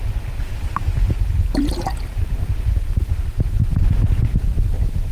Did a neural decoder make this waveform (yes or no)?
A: yes